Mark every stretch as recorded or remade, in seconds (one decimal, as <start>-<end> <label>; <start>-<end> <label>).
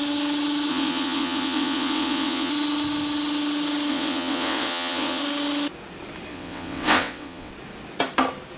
0.0-0.7 recorded; 0.7-2.5 remade; 2.5-3.9 recorded; 3.9-5.2 remade; 5.2-6.3 recorded; 6.3-7.5 remade; 7.5-8.6 recorded